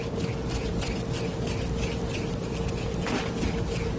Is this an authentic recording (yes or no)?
yes